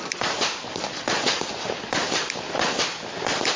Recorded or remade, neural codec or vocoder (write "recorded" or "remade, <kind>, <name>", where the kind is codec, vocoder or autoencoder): recorded